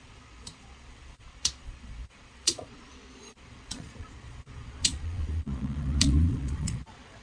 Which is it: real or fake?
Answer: fake